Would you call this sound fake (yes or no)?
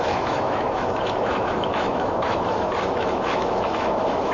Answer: yes